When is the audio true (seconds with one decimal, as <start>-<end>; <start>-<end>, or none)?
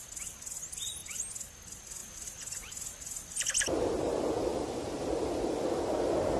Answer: 0.0-6.4